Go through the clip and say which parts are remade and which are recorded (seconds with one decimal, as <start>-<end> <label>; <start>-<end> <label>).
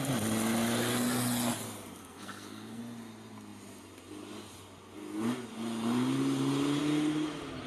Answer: 0.0-2.0 recorded; 2.0-2.8 remade; 2.8-7.7 recorded